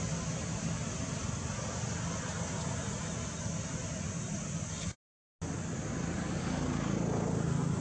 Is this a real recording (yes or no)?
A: yes